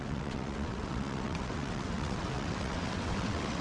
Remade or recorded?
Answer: remade